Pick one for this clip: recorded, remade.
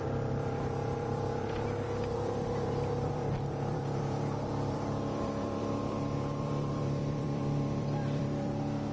remade